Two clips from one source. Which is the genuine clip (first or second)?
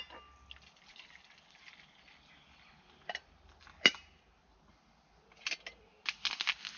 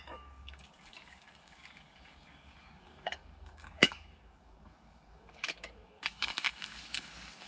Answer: first